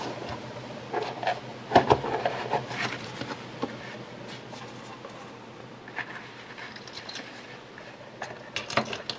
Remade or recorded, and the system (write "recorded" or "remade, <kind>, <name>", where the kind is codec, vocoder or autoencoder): recorded